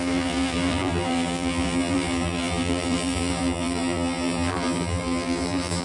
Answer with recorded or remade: remade